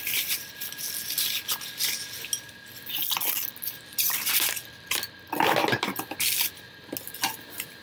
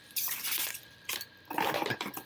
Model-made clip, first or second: second